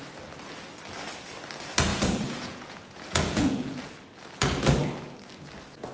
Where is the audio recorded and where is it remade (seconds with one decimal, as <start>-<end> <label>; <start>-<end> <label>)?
0.0-1.9 recorded; 1.9-3.9 remade; 3.9-5.9 recorded

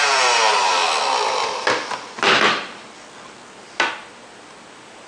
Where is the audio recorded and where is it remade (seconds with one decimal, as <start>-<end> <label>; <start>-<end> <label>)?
0.0-5.1 recorded